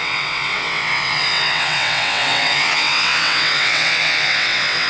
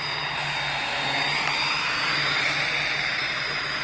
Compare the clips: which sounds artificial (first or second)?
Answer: first